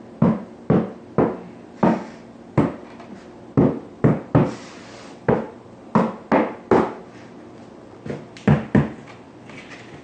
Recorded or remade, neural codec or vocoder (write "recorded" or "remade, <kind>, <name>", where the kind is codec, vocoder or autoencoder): recorded